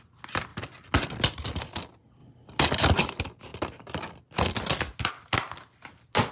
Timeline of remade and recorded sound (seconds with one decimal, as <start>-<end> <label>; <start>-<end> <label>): 0.0-6.3 recorded